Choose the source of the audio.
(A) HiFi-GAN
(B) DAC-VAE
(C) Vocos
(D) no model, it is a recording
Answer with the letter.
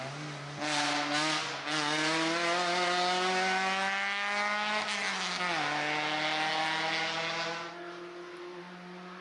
D